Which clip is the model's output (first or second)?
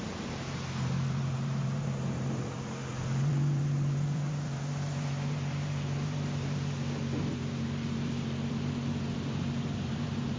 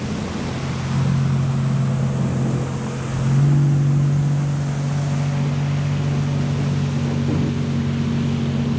first